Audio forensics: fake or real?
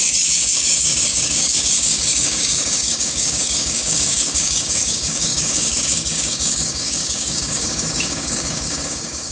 fake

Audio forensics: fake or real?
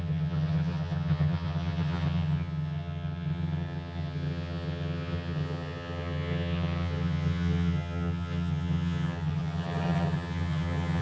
fake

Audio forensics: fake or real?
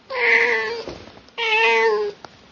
real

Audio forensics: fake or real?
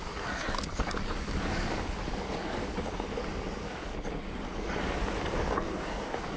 fake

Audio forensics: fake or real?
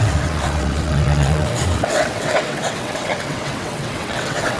fake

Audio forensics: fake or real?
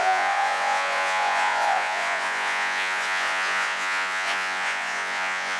fake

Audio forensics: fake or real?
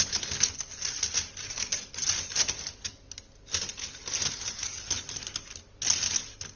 real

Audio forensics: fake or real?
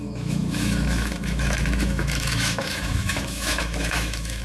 fake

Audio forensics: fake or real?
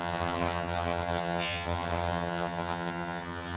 fake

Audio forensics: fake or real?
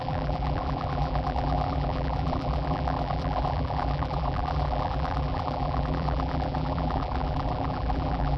fake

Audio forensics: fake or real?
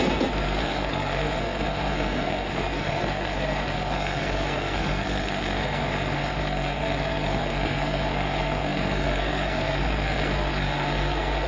fake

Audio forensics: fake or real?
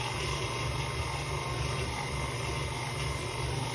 real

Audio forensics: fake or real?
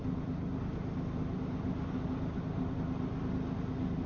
real